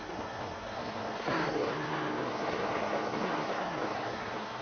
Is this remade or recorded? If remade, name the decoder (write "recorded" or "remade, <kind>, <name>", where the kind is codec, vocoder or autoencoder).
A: remade, codec, SNAC